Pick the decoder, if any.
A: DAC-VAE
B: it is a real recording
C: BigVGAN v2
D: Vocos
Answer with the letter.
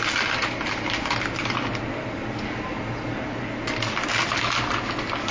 B